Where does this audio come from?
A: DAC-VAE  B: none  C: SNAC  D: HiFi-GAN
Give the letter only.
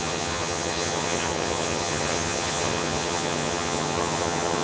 D